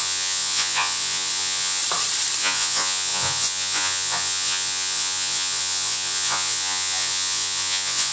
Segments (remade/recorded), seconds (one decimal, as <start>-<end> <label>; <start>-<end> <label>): 0.0-1.8 remade; 1.8-2.4 recorded; 2.4-8.1 remade